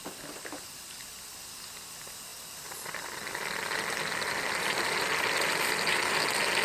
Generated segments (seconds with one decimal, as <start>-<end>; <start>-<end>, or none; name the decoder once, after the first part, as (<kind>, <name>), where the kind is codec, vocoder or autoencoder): 2.3-6.0 (vocoder, BigVGAN v2)